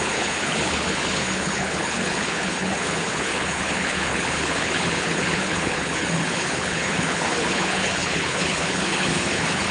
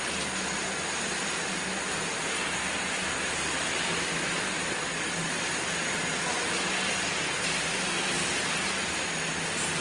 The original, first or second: second